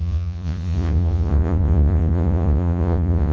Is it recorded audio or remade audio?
remade